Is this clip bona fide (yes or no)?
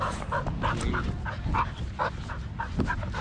yes